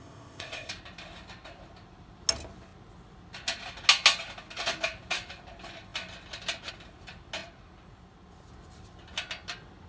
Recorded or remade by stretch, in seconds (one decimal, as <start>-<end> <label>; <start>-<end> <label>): 0.0-0.7 remade; 0.7-9.9 recorded